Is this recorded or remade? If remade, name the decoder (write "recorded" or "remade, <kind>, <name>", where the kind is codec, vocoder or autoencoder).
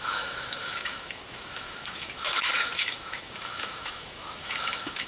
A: remade, autoencoder, DAC-VAE